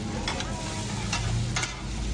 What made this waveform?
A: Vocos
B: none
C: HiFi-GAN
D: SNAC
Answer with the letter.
B